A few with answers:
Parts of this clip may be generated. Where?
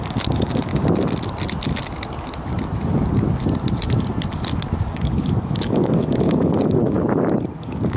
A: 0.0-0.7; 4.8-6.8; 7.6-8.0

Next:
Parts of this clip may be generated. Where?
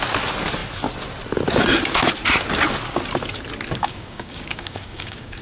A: 3.8-5.4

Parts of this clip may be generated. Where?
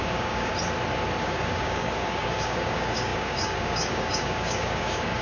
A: 0.0-0.5; 1.2-5.2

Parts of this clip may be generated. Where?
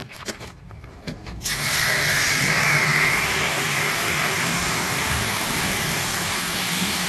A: 0.0-7.1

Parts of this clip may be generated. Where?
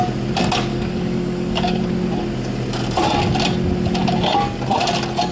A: 0.7-1.8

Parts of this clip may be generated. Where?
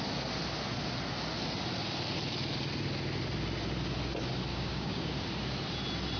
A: 4.5-5.1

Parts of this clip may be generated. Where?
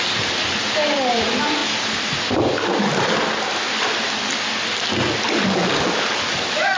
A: 5.4-6.8